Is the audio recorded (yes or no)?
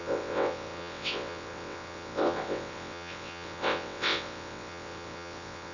no